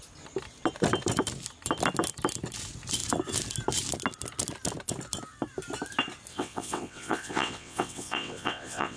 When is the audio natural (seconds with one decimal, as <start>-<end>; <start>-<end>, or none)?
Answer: 0.0-6.3